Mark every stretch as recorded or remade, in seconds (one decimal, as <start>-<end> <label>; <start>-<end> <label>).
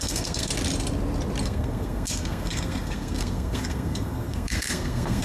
0.0-0.5 remade; 0.5-1.4 recorded; 1.4-5.2 remade